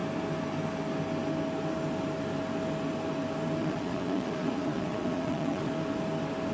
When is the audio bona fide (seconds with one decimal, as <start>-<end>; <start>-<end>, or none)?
0.0-3.6; 5.7-6.5